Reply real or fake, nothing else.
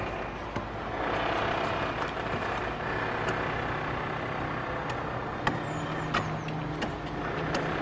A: real